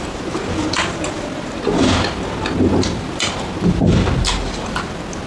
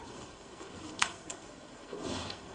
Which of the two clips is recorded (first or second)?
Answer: first